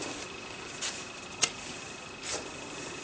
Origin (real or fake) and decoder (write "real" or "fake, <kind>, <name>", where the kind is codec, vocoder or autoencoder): real